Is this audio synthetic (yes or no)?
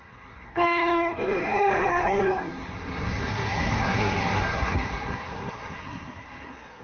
yes